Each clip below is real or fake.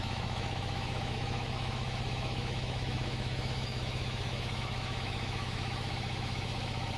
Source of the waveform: fake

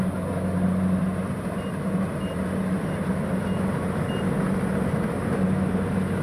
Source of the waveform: real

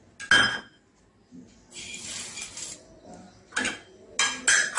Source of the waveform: real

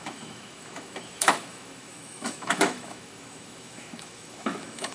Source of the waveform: fake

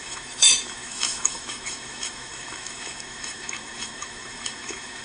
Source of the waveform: fake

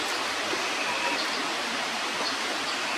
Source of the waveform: real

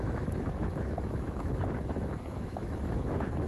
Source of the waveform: fake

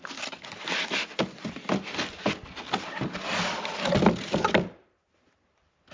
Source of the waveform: real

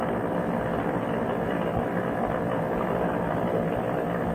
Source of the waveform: real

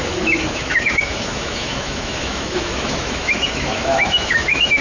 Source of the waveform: fake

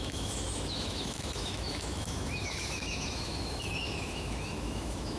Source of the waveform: fake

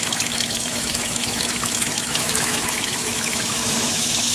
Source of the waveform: fake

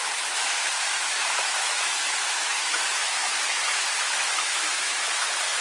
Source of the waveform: fake